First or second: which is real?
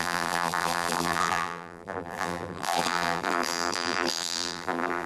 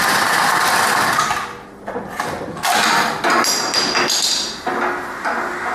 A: second